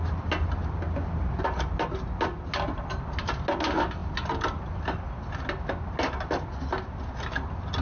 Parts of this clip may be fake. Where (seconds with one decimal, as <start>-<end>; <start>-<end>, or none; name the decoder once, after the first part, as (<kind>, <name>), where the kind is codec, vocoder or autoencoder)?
none